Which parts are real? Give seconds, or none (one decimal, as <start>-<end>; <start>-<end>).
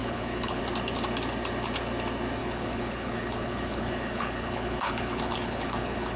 0.6-2.4